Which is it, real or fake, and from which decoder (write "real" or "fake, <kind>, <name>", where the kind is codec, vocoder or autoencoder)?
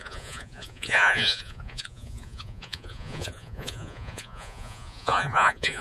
fake, vocoder, Vocos